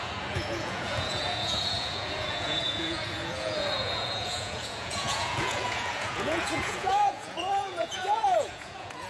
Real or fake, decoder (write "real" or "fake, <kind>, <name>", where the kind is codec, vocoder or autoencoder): fake, vocoder, Vocos